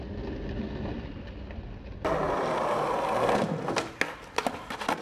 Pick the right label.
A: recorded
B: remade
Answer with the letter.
A